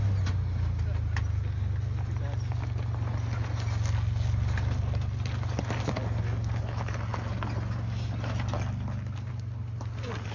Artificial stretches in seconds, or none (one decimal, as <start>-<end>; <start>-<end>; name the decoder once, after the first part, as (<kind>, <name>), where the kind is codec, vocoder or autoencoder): none